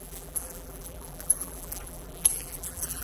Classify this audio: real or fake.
fake